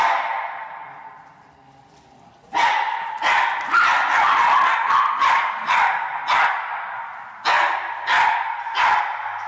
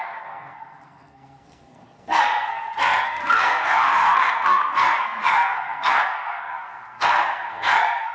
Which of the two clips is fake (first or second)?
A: second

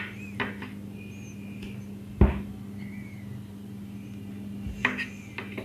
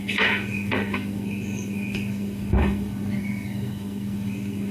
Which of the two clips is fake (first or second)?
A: second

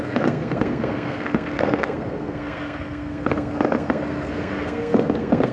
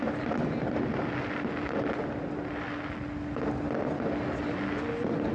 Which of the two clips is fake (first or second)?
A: first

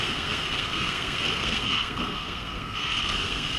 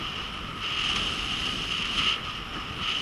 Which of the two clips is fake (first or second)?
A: first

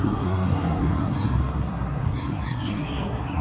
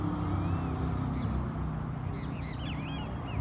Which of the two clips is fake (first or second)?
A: first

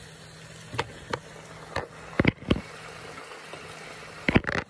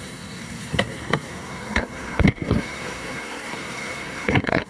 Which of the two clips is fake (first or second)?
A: second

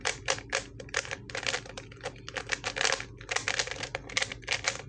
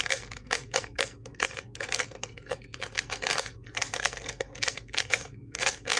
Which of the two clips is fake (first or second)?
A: second